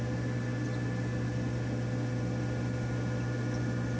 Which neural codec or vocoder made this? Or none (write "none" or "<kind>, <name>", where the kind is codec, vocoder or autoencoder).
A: none